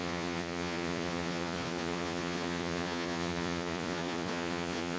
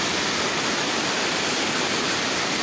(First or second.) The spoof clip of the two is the first